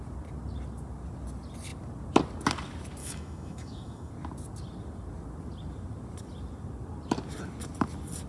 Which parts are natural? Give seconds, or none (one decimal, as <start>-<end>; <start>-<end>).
0.0-3.0; 4.1-8.3